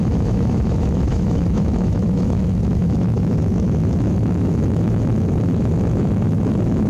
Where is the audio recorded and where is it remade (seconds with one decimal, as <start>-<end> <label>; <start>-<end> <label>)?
0.0-6.9 remade